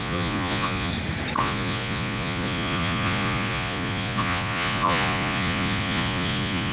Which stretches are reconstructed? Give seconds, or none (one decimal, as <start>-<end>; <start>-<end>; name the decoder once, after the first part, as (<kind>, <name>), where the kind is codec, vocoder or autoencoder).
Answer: 0.0-0.9 (vocoder, Vocos); 1.4-6.7